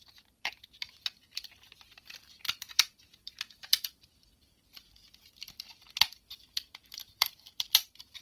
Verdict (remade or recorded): remade